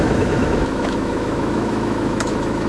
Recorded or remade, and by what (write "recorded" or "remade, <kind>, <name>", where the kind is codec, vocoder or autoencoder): remade, autoencoder, DAC-VAE